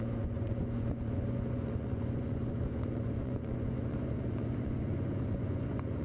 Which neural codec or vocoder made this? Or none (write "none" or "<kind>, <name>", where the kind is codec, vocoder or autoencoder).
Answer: vocoder, Vocos